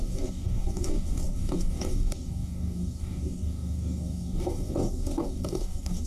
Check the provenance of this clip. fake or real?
fake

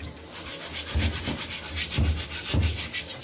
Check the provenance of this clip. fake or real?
real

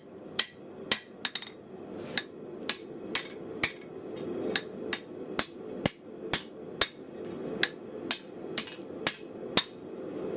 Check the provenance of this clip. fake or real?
real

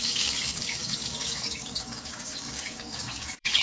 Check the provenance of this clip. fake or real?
fake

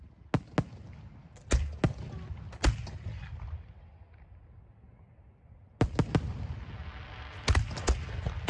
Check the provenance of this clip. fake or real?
real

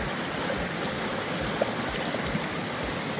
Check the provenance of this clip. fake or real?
real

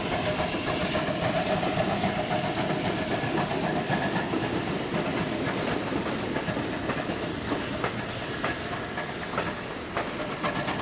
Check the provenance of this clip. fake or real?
real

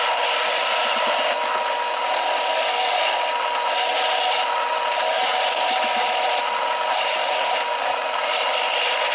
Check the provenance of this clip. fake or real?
real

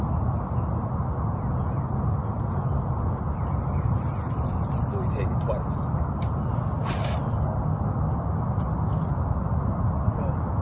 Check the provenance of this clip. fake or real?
real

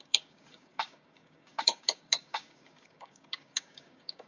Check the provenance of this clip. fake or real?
fake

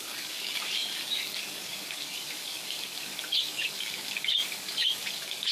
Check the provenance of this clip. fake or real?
fake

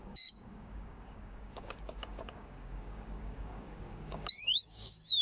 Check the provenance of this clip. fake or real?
fake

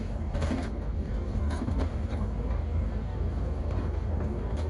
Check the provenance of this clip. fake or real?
fake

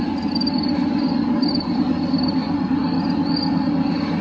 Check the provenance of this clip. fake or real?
real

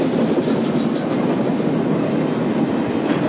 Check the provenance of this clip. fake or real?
real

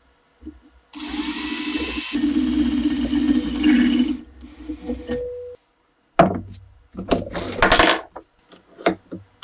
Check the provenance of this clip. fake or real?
real